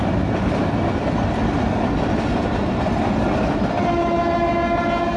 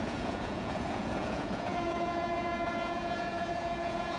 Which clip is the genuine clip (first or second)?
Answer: first